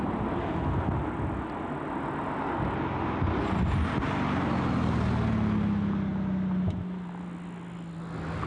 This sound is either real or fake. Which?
real